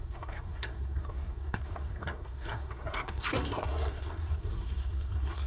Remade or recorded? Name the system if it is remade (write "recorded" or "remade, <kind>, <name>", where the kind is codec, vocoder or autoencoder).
remade, codec, SNAC